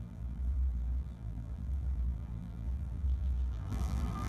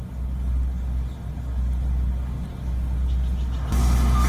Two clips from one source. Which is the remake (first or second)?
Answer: first